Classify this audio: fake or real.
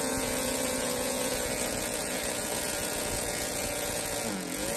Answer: fake